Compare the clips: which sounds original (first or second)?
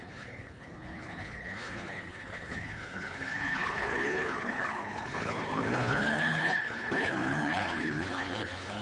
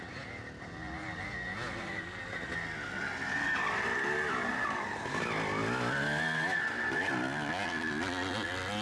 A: second